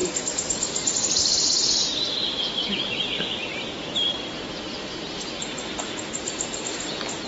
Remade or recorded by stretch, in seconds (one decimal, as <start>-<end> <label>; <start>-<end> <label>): 0.0-1.2 remade; 1.2-1.8 recorded; 1.8-2.7 remade; 2.7-4.7 recorded; 4.7-5.4 remade; 5.4-7.3 recorded